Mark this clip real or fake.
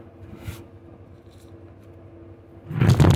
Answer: real